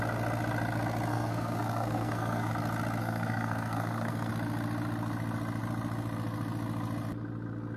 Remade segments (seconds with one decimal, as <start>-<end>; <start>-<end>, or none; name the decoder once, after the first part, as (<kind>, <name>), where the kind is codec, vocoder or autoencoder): 1.1-2.5 (codec, SNAC); 3.0-4.3